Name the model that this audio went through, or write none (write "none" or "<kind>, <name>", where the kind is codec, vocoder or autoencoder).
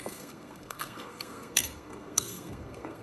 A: codec, SNAC